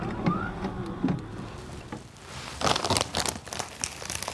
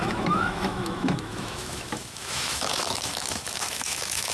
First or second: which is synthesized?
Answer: second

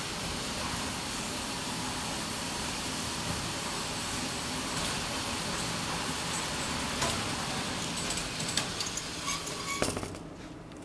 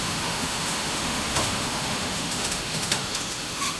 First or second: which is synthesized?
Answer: second